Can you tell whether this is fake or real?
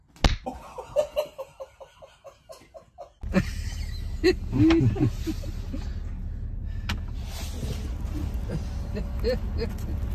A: real